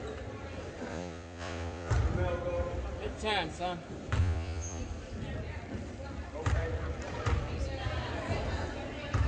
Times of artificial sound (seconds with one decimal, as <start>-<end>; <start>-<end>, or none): 0.9-1.9; 4.2-4.8